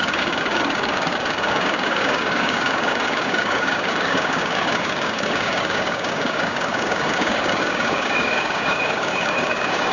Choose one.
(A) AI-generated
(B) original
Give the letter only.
A